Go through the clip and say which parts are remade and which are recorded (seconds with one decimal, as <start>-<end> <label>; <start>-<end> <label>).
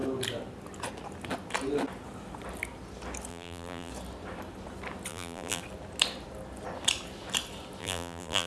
0.0-3.3 recorded; 3.3-3.9 remade; 3.9-5.1 recorded; 5.1-5.6 remade; 5.6-7.8 recorded; 7.8-8.5 remade